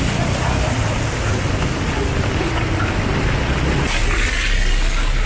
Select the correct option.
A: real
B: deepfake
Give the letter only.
A